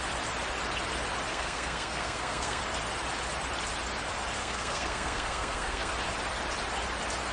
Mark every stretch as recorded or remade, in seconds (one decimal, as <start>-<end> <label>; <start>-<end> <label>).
0.0-1.3 recorded; 1.3-2.6 remade; 2.6-4.4 recorded; 4.4-5.9 remade; 5.9-7.3 recorded